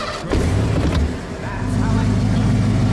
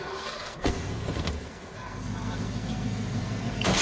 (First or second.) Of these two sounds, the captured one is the first